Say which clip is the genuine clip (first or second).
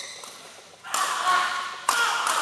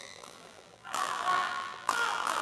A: first